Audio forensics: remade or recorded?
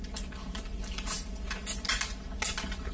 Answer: recorded